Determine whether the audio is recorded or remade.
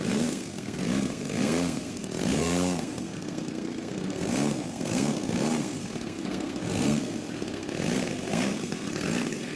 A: remade